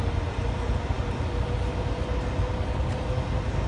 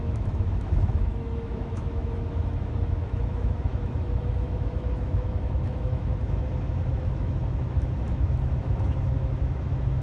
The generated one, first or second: second